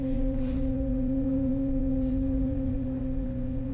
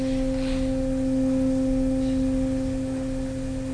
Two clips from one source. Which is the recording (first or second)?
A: second